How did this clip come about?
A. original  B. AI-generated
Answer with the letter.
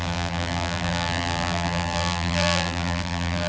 B